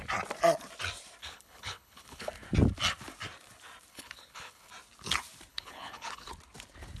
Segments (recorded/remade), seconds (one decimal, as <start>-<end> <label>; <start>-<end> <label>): 0.0-1.2 recorded; 1.2-2.3 remade; 2.3-3.9 recorded; 3.9-4.7 remade; 4.7-5.5 recorded; 5.5-6.3 remade; 6.3-7.0 recorded